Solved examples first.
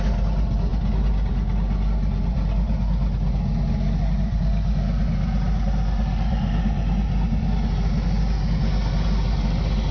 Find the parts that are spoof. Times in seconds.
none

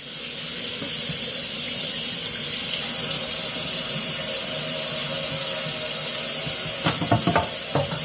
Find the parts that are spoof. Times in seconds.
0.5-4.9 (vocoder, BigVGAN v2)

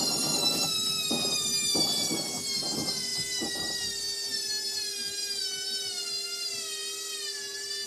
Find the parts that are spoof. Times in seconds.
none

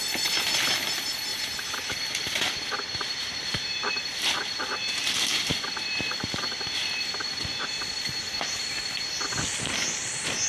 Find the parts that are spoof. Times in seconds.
1.3-4.4 (vocoder, BigVGAN v2)

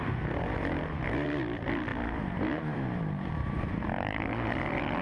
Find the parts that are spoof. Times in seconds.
0.0-5.0 (vocoder, BigVGAN v2)

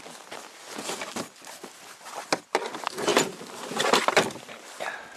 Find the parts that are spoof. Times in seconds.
3.1-4.7 (vocoder, BigVGAN v2)